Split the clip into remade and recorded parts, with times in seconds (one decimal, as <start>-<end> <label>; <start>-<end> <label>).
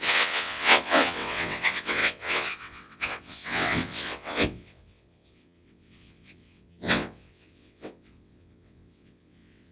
0.0-9.7 remade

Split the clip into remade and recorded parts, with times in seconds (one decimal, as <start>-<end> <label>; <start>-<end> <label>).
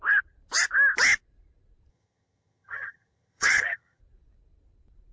0.0-1.9 recorded; 1.9-4.0 remade; 4.0-5.1 recorded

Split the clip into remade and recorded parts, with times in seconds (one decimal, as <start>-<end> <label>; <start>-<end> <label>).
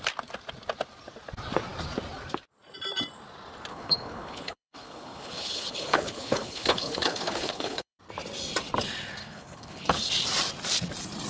0.0-3.7 recorded; 3.7-8.0 remade; 8.0-9.2 recorded; 9.2-10.1 remade; 10.1-11.3 recorded